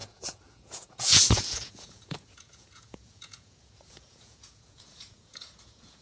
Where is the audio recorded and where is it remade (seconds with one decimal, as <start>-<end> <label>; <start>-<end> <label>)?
0.0-6.0 remade